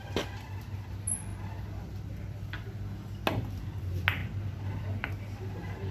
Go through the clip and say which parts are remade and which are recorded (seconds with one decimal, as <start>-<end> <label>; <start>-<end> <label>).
0.0-5.9 recorded